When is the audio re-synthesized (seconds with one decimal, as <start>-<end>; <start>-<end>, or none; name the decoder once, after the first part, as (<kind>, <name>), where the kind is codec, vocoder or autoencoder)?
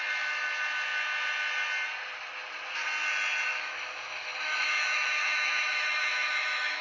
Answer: 3.5-6.8 (autoencoder, DAC-VAE)